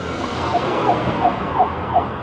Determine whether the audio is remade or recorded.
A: remade